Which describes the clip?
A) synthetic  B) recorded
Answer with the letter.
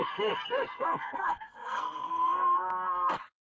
A